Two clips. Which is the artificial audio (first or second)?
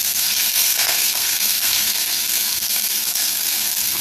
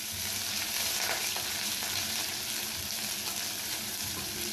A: first